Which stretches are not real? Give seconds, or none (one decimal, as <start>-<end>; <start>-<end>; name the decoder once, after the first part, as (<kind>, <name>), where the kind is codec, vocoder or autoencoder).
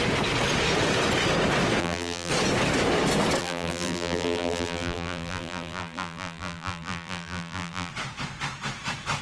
1.8-2.3 (vocoder, BigVGAN v2); 3.4-7.9